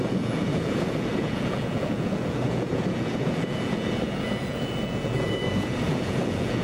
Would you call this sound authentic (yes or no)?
no